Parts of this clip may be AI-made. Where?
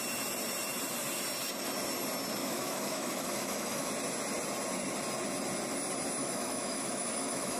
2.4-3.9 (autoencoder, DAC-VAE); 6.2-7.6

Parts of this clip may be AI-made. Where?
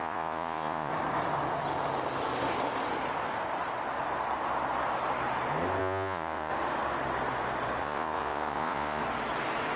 0.0-0.9 (vocoder, Vocos); 5.8-6.5; 7.8-9.0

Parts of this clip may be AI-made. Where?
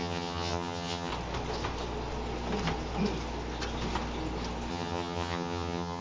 0.0-1.1 (vocoder, HiFi-GAN); 4.7-6.0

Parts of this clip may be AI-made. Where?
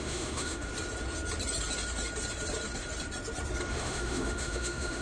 0.0-0.7 (autoencoder, DAC-VAE); 3.7-5.0